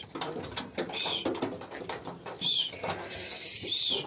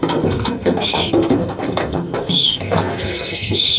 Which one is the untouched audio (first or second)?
first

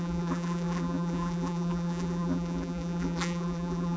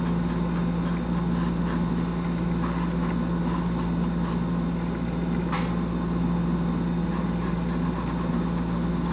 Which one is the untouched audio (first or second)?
second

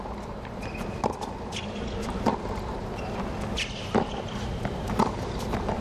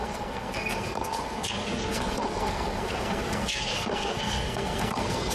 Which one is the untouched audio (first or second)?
first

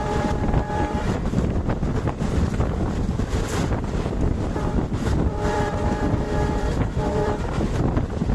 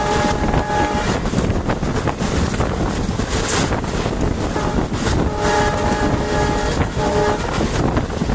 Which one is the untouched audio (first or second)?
second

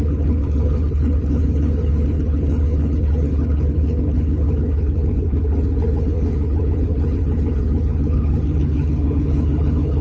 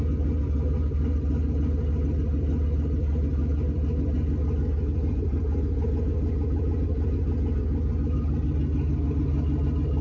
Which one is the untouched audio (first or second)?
second